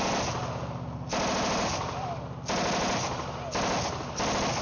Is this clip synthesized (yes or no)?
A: no